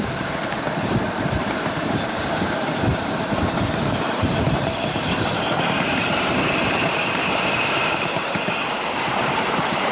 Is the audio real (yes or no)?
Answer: no